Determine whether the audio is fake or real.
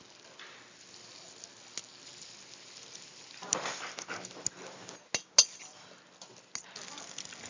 real